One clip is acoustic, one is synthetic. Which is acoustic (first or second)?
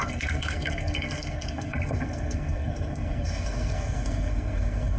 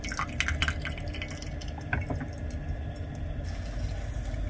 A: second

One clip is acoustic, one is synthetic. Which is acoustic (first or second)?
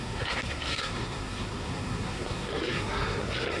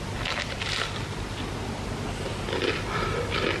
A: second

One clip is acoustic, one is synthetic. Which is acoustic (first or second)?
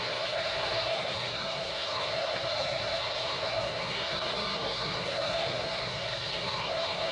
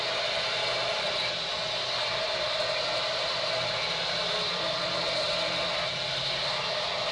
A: second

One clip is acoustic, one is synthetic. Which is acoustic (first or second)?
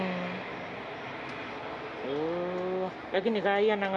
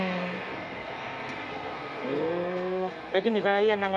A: first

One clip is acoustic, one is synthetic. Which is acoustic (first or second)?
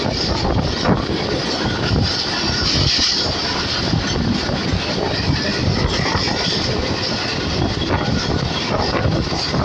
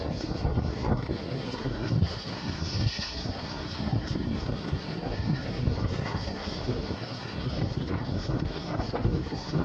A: first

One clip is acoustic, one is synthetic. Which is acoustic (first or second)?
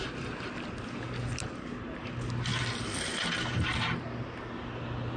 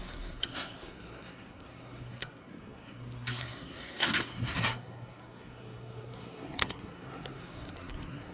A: first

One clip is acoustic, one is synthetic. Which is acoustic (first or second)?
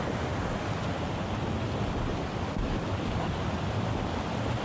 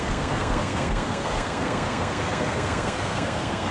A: first